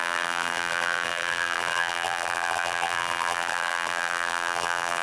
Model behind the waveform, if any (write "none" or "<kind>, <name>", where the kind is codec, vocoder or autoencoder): vocoder, BigVGAN v2